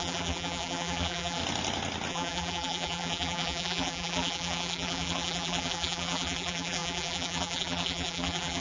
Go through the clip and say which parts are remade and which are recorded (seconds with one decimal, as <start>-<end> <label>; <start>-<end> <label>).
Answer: 0.0-1.4 remade; 1.4-2.1 recorded; 2.1-8.6 remade